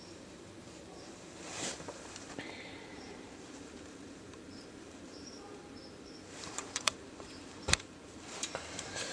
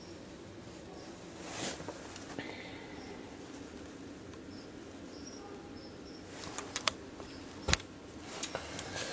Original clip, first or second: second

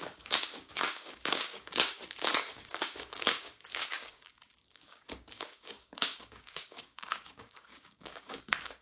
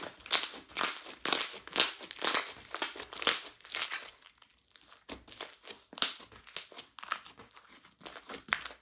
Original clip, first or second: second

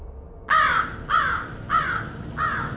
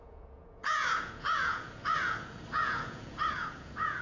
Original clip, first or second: first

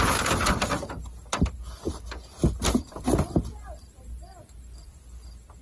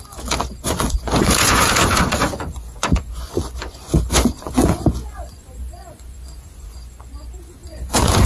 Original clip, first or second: first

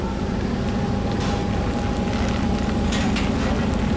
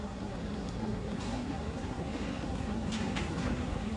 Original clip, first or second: first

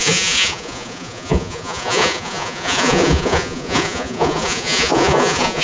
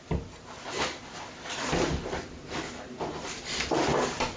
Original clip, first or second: second